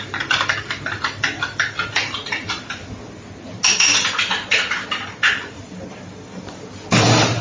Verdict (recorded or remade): recorded